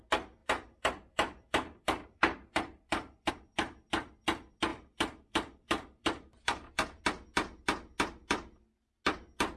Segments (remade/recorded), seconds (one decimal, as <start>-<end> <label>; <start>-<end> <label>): 0.0-0.4 recorded; 0.4-3.3 remade; 3.3-4.7 recorded; 4.7-7.0 remade; 7.0-9.6 recorded